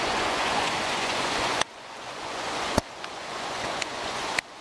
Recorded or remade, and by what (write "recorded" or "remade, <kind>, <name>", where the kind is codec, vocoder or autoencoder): remade, vocoder, Vocos